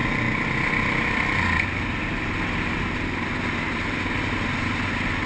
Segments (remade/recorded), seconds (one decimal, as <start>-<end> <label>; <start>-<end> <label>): 0.0-5.3 recorded